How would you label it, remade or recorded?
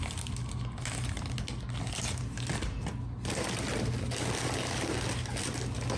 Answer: recorded